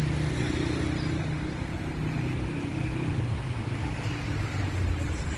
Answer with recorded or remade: recorded